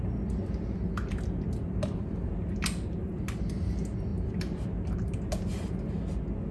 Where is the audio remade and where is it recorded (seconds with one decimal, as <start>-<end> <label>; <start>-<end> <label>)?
0.0-6.5 recorded